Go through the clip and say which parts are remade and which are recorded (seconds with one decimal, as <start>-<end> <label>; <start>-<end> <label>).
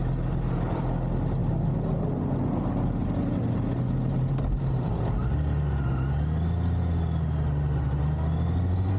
0.0-9.0 recorded